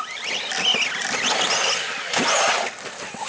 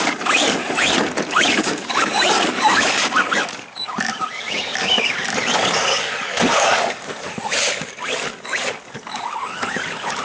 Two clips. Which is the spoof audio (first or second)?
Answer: second